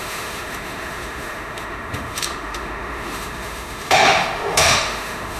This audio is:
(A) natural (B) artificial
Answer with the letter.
B